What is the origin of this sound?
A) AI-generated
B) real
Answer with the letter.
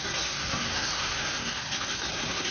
A